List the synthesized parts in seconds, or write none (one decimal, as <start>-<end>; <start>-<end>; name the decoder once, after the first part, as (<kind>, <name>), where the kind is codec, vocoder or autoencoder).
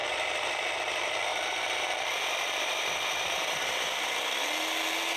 0.0-0.7 (vocoder, BigVGAN v2); 1.3-4.4